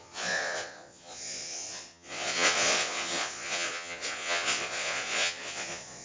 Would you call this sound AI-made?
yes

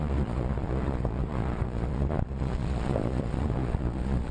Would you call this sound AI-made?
yes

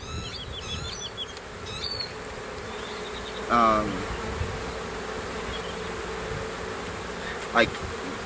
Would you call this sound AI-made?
no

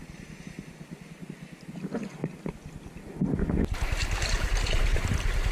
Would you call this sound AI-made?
no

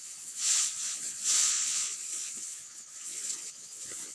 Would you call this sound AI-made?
yes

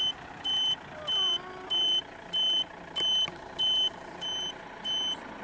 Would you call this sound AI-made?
no